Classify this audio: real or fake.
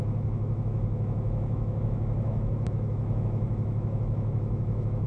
fake